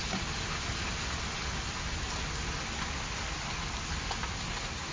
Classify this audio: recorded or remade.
recorded